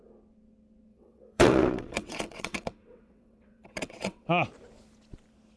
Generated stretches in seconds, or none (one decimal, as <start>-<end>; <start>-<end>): 0.9-4.3